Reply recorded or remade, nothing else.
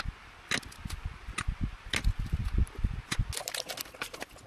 recorded